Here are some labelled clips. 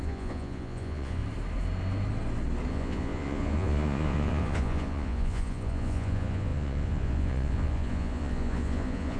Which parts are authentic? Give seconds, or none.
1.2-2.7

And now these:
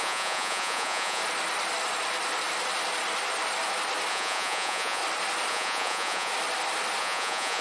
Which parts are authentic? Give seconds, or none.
1.2-4.1; 5.0-5.5; 6.3-7.0

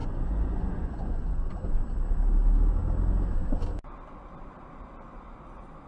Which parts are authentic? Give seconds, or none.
1.5-5.9

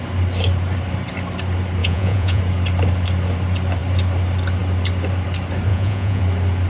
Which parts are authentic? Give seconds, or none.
0.0-1.8; 2.4-5.7; 6.2-6.7

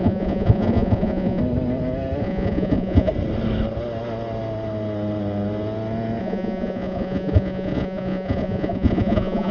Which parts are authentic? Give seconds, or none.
1.4-2.2; 3.1-6.2